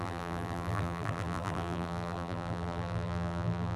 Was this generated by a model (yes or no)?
yes